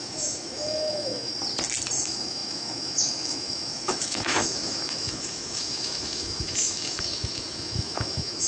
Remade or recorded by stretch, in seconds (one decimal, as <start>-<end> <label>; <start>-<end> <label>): 0.0-1.3 remade; 1.3-2.0 recorded; 2.0-8.5 remade